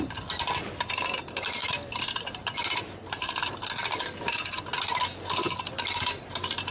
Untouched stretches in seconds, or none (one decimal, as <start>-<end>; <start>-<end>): 0.0-6.7